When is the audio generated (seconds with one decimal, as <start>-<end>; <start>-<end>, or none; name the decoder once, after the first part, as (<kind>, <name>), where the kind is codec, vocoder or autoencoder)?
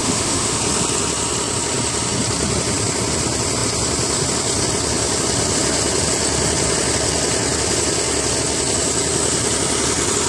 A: 0.0-0.6 (autoencoder, DAC-VAE)